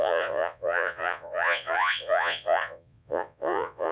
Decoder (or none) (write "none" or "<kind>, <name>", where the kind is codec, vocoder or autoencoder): vocoder, Vocos